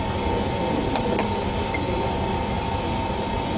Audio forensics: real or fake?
real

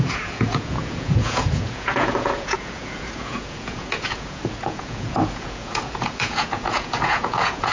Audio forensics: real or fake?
fake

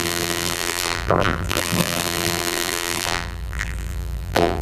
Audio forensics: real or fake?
fake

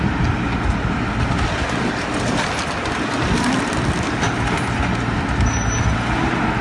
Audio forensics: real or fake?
real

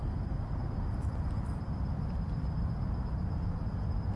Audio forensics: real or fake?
real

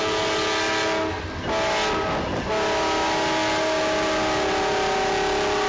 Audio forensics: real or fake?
real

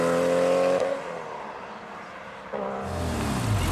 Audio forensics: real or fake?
real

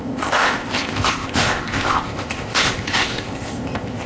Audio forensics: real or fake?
fake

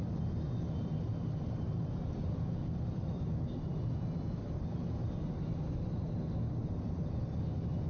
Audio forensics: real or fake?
real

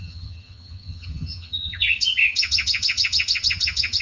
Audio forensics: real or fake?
fake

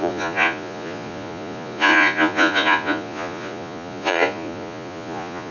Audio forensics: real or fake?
fake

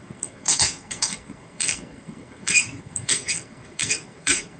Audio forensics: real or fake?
fake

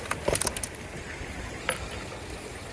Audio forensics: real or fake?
real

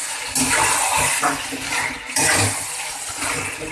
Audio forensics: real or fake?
real